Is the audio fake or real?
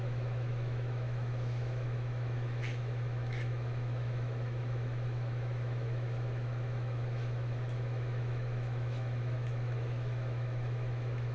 fake